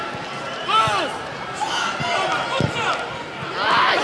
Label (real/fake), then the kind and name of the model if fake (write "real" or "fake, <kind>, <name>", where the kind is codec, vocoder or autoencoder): real